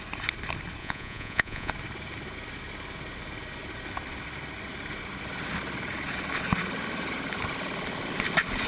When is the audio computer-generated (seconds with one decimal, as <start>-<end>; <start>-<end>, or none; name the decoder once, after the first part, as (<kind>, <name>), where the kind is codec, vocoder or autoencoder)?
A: 0.8-1.7 (vocoder, Vocos)